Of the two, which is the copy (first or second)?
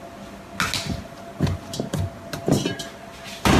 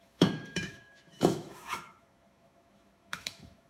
second